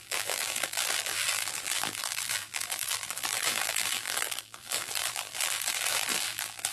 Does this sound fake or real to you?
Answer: fake